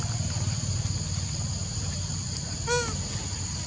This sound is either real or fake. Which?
real